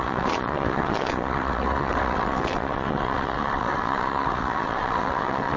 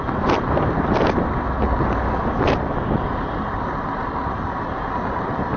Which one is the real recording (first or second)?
second